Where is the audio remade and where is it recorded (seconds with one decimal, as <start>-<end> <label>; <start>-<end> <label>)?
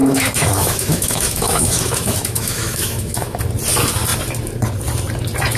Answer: 0.0-3.4 remade; 3.4-5.6 recorded